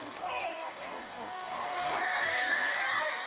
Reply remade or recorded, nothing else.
remade